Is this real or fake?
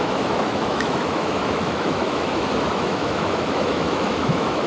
fake